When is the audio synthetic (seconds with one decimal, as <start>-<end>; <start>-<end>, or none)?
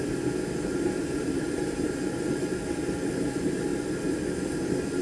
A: none